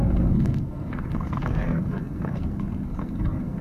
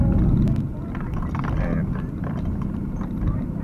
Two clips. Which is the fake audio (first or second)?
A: first